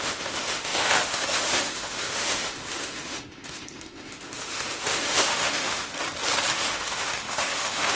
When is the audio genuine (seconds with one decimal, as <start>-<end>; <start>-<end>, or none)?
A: 5.9-6.5